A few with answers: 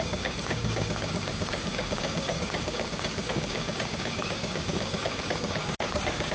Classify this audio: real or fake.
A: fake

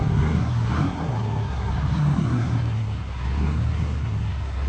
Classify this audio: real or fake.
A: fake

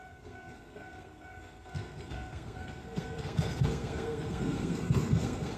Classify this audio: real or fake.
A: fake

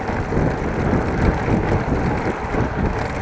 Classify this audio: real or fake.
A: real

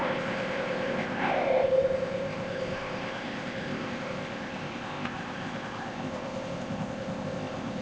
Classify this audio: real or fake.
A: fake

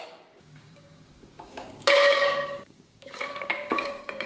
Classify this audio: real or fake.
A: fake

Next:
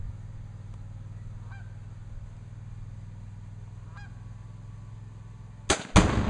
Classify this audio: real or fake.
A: real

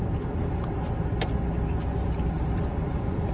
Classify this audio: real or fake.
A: real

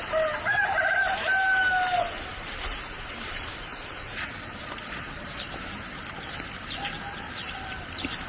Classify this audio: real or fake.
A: real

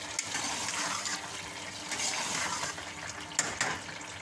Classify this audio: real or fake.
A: real